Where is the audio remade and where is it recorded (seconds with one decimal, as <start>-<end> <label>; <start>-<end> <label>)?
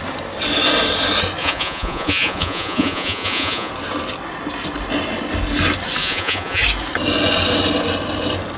0.0-1.4 recorded; 1.4-3.7 remade; 3.7-6.0 recorded; 6.0-6.6 remade; 6.6-8.6 recorded